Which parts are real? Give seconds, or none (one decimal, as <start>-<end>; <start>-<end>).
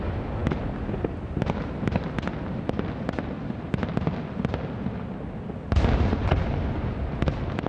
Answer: 0.0-7.7